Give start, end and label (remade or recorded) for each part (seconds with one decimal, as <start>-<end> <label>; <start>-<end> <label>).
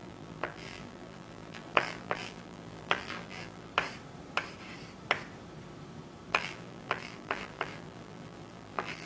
0.0-3.7 remade; 3.7-6.3 recorded; 6.3-9.1 remade